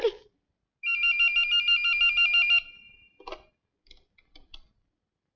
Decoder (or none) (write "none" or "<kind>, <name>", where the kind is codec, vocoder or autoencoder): none